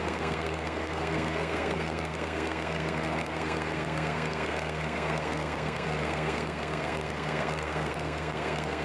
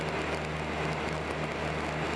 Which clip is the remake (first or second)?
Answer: first